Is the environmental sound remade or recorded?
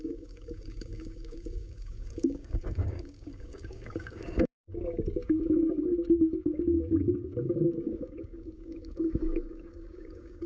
remade